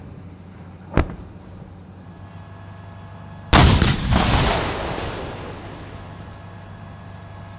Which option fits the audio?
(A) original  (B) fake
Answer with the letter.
A